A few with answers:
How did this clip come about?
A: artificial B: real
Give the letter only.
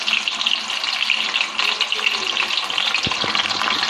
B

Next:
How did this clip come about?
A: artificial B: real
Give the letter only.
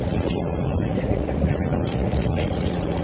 A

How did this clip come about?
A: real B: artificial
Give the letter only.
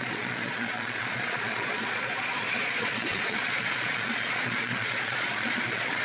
B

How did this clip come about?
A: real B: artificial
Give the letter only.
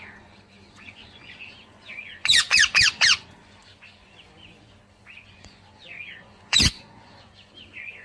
B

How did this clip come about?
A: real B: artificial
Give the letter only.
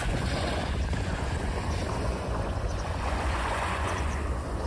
B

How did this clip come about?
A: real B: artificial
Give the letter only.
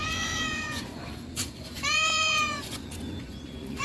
B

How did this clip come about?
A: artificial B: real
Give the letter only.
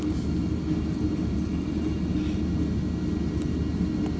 B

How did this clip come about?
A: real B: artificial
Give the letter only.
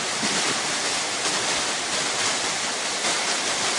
A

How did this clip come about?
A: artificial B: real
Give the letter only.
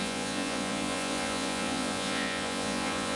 A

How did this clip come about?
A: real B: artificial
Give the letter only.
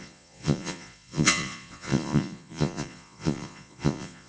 B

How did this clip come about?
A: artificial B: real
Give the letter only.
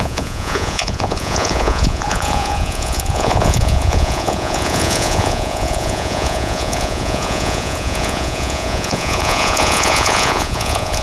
A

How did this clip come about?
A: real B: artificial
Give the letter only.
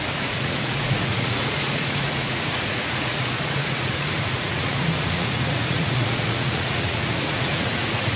B